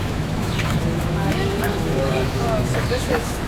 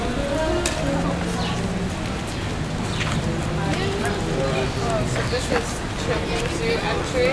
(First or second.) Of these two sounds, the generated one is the first